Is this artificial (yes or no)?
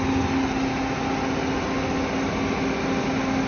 no